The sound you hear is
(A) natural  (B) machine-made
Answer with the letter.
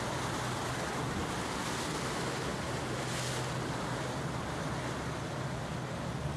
A